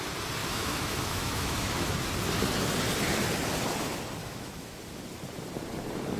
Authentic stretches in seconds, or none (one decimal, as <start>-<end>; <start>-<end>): 0.0-0.4; 2.0-4.2; 4.8-6.2